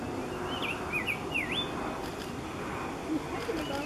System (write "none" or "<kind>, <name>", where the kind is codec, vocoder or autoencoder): none